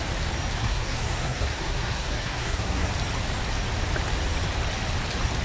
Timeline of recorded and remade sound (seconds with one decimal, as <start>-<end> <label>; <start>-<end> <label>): 0.0-0.6 recorded; 0.6-2.9 remade; 2.9-5.4 recorded